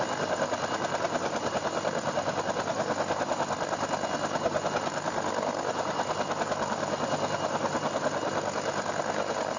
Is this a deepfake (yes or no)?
no